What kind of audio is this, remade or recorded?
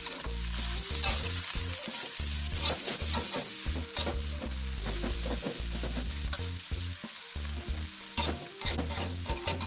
recorded